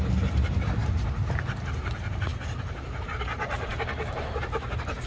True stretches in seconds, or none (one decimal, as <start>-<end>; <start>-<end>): 0.0-5.1